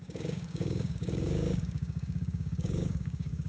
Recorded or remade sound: remade